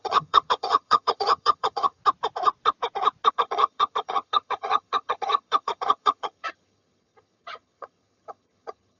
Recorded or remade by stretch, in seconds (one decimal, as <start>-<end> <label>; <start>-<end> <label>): 0.0-2.0 remade; 2.0-3.3 recorded; 3.3-9.0 remade